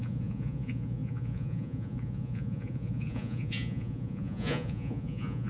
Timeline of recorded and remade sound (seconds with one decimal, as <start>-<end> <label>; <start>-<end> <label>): 0.0-5.5 remade